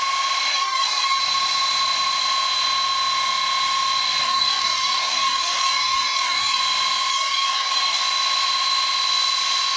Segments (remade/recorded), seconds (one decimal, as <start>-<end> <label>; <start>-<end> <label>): 0.0-0.5 recorded; 0.5-1.2 remade; 1.2-4.2 recorded; 4.2-6.6 remade; 6.6-7.1 recorded; 7.1-8.0 remade; 8.0-9.8 recorded